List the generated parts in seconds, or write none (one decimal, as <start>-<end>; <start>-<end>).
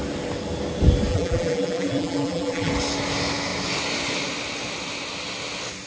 1.1-2.7